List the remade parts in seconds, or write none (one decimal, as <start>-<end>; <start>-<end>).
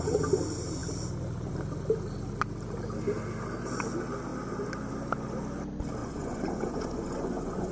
6.0-7.7